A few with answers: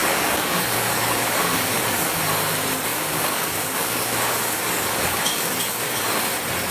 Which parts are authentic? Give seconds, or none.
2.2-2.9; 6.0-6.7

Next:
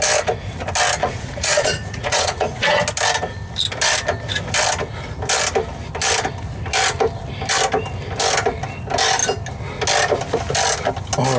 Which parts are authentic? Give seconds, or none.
0.0-1.0; 2.8-11.4

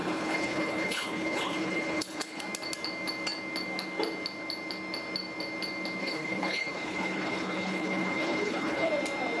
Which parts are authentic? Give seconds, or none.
2.4-6.0; 8.9-9.4

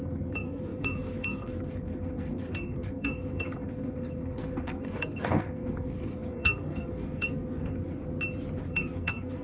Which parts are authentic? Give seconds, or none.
8.0-8.6